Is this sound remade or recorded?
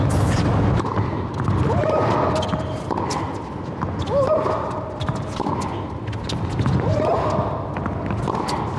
recorded